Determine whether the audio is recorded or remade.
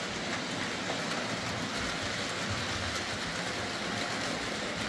recorded